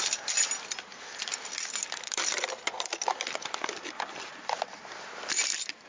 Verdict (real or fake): real